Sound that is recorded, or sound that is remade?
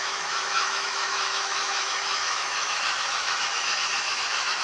remade